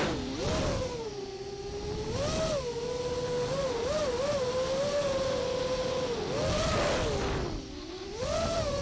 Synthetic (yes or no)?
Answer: no